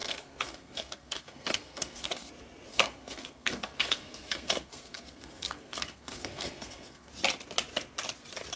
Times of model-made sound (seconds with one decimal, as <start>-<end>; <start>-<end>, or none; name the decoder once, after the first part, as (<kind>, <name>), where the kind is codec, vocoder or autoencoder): 0.0-2.3 (codec, SNAC); 2.7-7.1